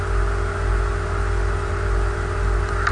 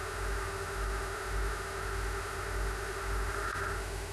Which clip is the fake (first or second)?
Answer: second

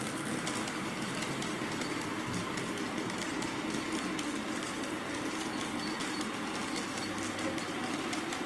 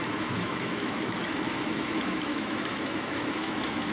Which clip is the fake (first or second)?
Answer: second